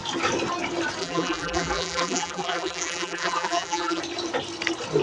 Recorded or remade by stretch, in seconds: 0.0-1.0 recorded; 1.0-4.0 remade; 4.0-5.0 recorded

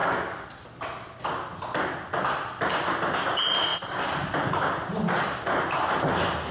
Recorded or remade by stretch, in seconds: 0.0-3.7 recorded; 3.7-4.5 remade; 4.5-6.5 recorded

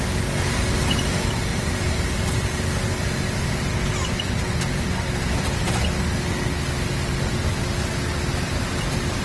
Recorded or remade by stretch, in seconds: 0.0-1.5 recorded; 1.5-2.1 remade; 2.1-9.2 recorded

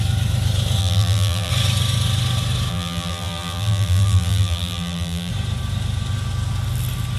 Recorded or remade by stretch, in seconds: 0.0-0.8 recorded; 0.8-1.5 remade; 1.5-2.7 recorded; 2.7-5.3 remade; 5.3-7.2 recorded

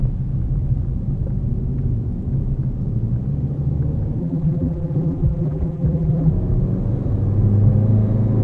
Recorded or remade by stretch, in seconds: 0.0-4.2 recorded; 4.2-6.3 remade; 6.3-8.4 recorded

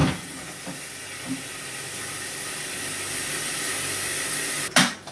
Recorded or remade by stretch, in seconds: 0.0-5.1 recorded

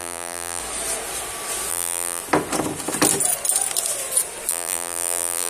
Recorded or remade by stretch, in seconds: 0.0-0.6 remade; 0.6-1.7 recorded; 1.7-2.2 remade; 2.2-4.5 recorded; 4.5-5.5 remade

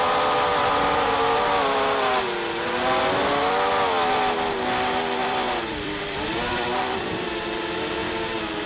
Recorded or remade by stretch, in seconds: 0.0-5.2 recorded; 5.2-7.6 remade; 7.6-8.7 recorded